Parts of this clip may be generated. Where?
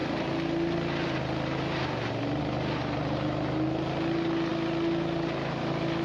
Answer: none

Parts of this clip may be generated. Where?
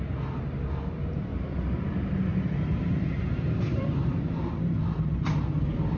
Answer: 1.3-1.9 (vocoder, BigVGAN v2); 2.3-5.2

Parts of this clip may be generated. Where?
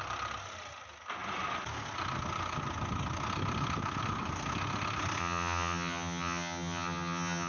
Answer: 5.2-7.5 (vocoder, HiFi-GAN)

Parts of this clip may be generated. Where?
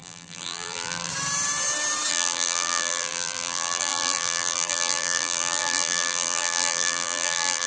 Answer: 0.0-1.1 (vocoder, BigVGAN v2); 2.1-7.7